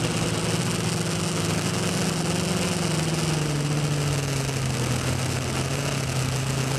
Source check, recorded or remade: recorded